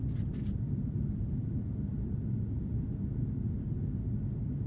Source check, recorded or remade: recorded